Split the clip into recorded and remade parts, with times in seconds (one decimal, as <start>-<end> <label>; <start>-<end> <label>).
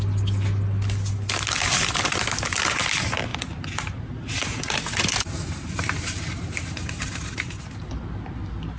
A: 0.0-3.3 recorded; 3.3-7.6 remade; 7.6-8.8 recorded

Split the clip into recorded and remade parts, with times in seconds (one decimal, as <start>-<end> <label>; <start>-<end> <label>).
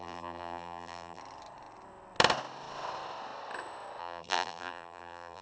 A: 0.0-1.2 remade; 1.2-4.0 recorded; 4.0-5.4 remade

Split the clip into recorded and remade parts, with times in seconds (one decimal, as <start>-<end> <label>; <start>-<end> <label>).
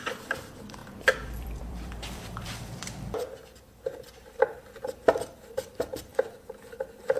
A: 0.0-6.1 remade; 6.1-6.7 recorded; 6.7-7.2 remade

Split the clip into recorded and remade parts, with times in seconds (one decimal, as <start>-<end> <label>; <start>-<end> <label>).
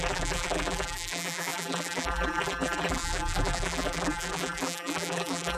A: 0.0-5.6 remade